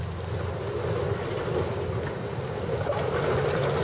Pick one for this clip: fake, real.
real